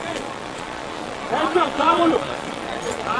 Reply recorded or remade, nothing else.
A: remade